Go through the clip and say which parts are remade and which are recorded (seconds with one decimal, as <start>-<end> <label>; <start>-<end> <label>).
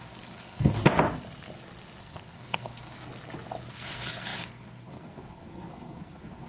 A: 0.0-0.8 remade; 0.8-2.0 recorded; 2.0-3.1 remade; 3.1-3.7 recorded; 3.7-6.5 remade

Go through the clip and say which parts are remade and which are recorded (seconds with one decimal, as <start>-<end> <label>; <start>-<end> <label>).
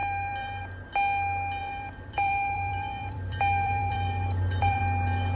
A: 0.0-0.6 remade; 0.6-1.6 recorded; 1.6-4.8 remade; 4.8-5.4 recorded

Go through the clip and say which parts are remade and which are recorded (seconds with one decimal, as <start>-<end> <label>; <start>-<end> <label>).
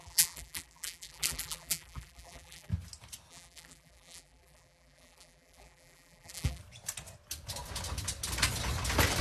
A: 0.0-2.7 remade; 2.7-3.3 recorded; 3.3-6.6 remade; 6.6-9.2 recorded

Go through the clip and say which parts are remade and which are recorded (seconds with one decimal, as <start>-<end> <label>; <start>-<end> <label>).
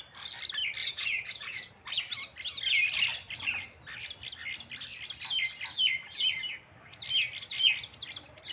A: 0.0-0.8 recorded; 0.8-1.7 remade; 1.7-8.5 recorded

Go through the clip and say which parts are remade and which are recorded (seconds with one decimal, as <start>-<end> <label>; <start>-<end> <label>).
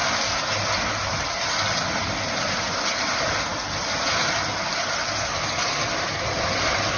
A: 0.0-7.0 recorded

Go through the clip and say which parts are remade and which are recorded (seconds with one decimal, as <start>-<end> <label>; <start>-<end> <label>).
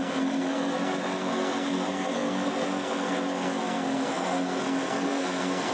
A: 0.0-5.7 remade